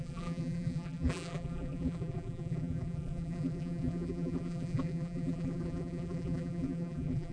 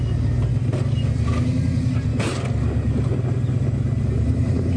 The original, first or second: second